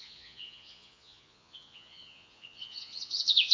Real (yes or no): no